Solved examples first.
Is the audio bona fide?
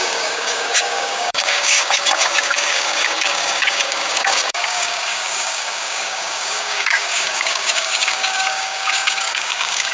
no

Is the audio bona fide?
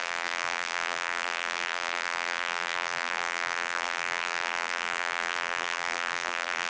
no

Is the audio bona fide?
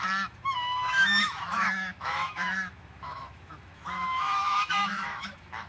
no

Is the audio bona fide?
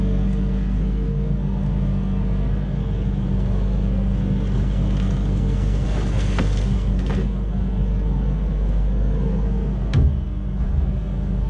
no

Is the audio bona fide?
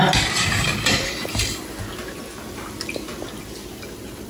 yes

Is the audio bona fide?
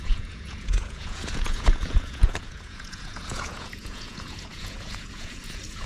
no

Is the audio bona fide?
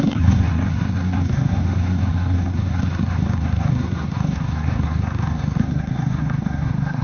no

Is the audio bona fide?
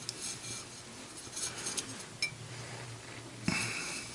yes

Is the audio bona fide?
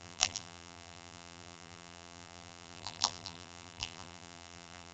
no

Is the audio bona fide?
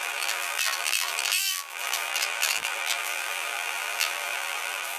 no